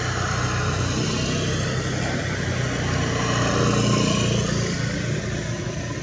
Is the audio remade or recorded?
recorded